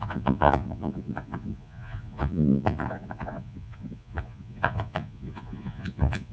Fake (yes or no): yes